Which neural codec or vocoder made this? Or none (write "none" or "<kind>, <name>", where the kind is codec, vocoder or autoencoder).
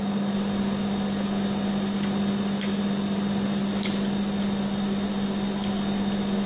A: none